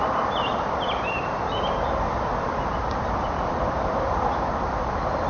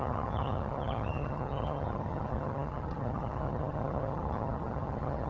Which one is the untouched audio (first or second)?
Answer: first